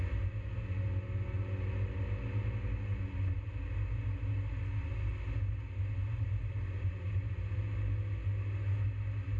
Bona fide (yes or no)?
yes